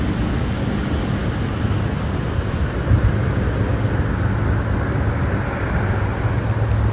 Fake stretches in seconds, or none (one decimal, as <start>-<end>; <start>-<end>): none